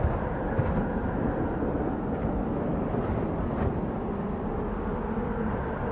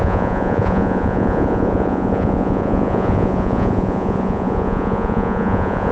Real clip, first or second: first